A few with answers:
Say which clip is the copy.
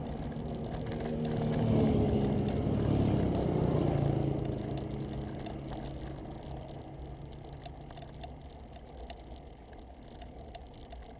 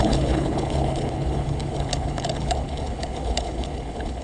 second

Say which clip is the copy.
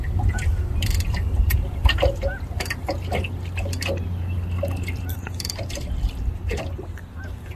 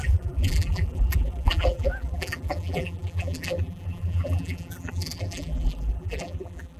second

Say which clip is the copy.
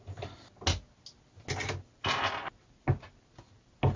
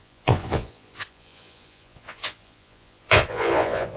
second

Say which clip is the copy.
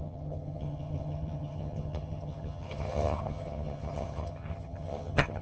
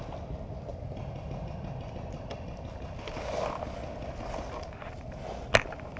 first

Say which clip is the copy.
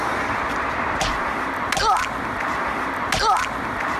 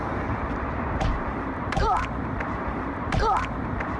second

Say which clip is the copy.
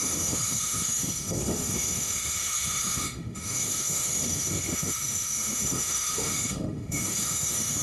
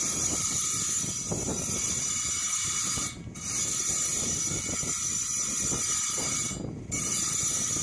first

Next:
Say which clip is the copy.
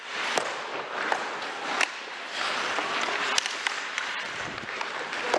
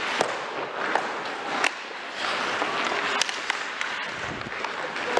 first